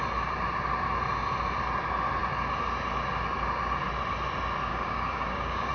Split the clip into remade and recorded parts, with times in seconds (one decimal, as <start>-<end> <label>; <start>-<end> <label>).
0.0-4.7 recorded; 4.7-5.7 remade